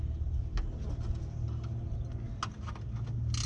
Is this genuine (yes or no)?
yes